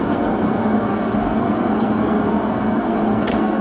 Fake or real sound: fake